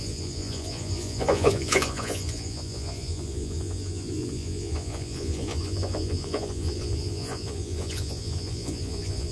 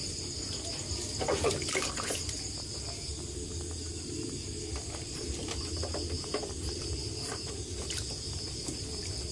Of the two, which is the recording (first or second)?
second